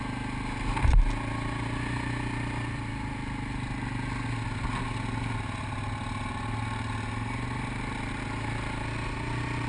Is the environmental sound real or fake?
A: real